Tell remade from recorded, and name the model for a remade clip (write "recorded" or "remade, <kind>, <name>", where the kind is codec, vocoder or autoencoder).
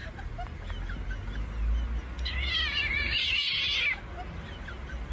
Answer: recorded